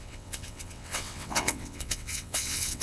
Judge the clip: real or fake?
fake